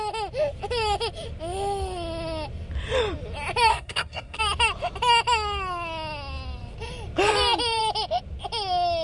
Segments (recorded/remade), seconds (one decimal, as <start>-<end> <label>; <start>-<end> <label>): 0.0-3.7 recorded; 3.7-4.4 remade; 4.4-9.0 recorded